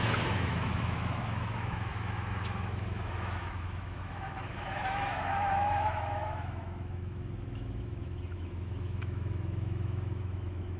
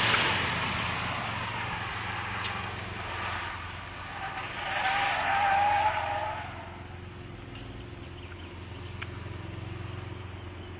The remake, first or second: first